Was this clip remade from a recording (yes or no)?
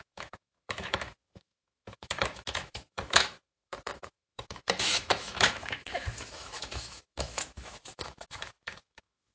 yes